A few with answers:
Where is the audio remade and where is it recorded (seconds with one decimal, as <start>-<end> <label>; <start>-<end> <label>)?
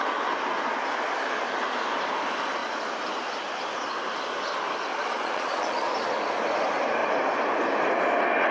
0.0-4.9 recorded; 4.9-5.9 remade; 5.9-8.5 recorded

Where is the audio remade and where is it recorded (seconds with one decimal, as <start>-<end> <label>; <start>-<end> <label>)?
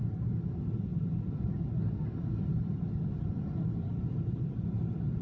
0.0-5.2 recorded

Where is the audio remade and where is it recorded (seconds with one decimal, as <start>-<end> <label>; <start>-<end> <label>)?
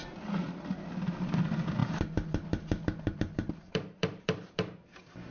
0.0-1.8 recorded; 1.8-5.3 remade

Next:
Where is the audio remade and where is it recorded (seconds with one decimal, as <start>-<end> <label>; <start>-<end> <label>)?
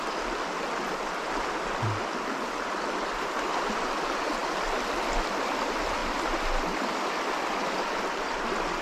0.0-8.8 recorded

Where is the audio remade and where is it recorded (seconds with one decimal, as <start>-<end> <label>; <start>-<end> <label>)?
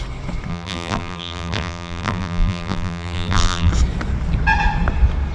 0.0-0.5 recorded; 0.5-3.7 remade; 3.7-5.3 recorded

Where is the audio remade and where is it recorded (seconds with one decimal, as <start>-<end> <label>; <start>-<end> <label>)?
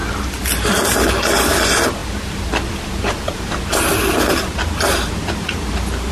0.0-1.1 remade; 1.1-6.1 recorded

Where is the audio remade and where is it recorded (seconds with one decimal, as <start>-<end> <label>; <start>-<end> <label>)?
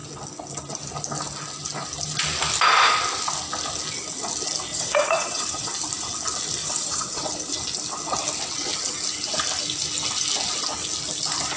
0.0-4.7 recorded; 4.7-5.7 remade; 5.7-6.6 recorded; 6.6-7.3 remade; 7.3-11.6 recorded